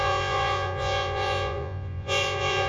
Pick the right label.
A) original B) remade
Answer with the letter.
B